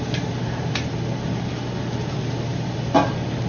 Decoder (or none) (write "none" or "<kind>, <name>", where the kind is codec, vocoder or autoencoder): none